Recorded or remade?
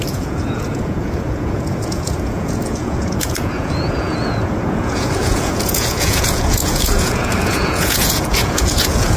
remade